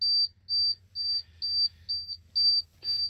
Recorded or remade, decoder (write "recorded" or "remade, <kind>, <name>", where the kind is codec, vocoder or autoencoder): recorded